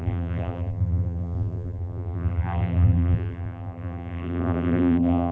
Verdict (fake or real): fake